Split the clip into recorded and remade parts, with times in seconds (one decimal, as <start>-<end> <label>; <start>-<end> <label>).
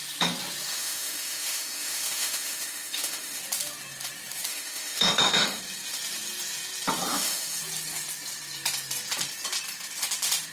0.0-0.7 recorded; 0.7-3.4 remade; 3.4-4.5 recorded; 4.5-5.6 remade; 5.6-7.1 recorded; 7.1-7.6 remade; 7.6-10.5 recorded